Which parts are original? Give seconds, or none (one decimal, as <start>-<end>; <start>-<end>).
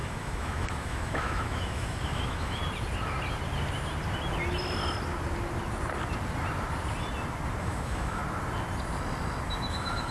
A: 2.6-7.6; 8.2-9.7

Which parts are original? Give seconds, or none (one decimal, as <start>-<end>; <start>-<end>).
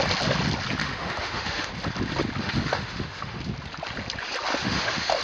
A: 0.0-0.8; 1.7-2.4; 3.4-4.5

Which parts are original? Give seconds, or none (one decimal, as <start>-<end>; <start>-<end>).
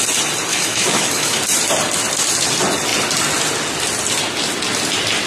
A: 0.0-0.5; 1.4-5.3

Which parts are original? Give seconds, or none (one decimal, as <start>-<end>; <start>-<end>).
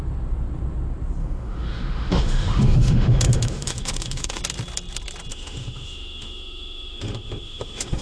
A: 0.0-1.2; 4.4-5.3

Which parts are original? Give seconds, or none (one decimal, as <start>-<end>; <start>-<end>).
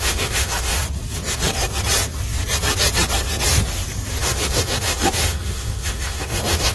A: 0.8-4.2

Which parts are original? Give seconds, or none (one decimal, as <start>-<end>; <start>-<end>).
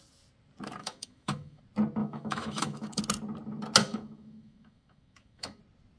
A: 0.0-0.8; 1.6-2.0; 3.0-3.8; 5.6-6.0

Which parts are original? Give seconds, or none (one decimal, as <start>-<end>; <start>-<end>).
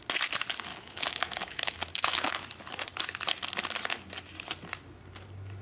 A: 0.0-0.7; 2.3-5.6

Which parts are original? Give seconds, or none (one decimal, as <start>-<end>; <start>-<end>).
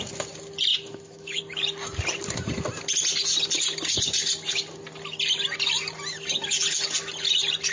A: 0.0-0.7; 1.4-7.7